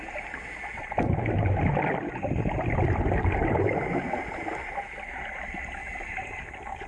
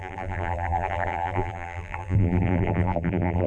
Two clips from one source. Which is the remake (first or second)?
second